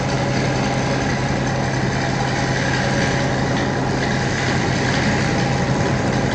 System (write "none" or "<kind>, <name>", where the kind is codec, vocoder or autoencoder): none